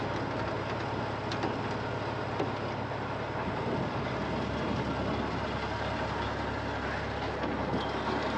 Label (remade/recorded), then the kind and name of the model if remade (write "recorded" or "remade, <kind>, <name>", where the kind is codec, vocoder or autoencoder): recorded